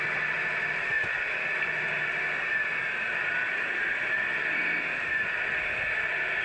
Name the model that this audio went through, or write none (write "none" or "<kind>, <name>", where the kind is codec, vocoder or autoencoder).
none